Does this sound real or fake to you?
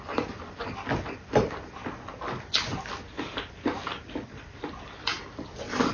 real